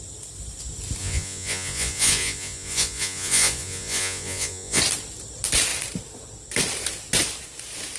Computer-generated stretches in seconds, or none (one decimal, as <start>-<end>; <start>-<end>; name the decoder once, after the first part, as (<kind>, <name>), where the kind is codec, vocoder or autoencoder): 1.0-4.8 (vocoder, Vocos)